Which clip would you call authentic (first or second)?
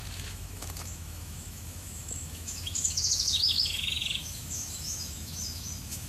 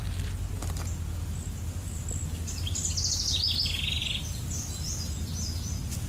second